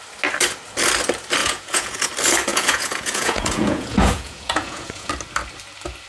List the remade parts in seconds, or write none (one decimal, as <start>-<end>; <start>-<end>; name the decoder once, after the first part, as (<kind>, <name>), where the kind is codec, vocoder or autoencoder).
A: 1.4-2.1 (vocoder, Vocos); 2.5-5.1